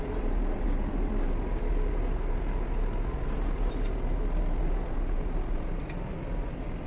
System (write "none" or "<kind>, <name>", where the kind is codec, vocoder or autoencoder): none